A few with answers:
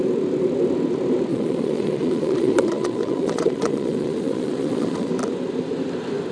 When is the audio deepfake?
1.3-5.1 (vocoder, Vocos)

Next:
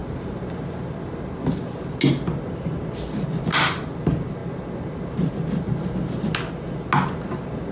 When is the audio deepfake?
none

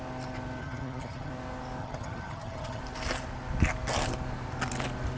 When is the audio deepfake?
0.6-1.3 (vocoder, HiFi-GAN); 1.8-2.8

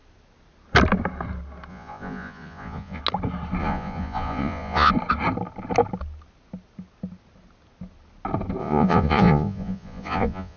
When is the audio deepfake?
1.7-3.0 (vocoder, Vocos); 3.6-4.9; 8.6-10.6